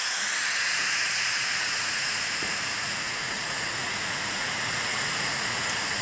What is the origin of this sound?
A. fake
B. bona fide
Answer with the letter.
A